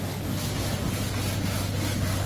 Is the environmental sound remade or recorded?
recorded